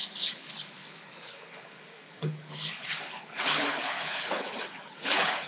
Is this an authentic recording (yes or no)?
no